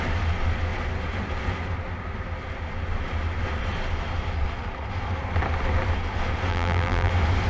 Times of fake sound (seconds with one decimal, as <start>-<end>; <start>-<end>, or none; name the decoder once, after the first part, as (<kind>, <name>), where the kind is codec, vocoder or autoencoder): 6.5-7.1 (vocoder, BigVGAN v2)